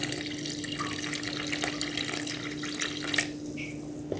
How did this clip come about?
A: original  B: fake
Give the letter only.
A